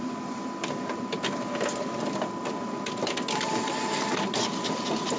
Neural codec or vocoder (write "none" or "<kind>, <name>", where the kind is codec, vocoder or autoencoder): none